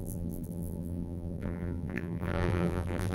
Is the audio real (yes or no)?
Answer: no